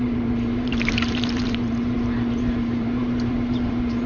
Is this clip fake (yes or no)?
yes